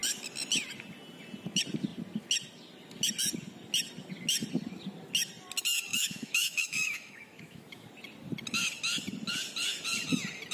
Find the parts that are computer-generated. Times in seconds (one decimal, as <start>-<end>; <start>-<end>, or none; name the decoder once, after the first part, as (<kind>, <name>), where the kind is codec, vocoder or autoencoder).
5.9-7.9 (autoencoder, DAC-VAE)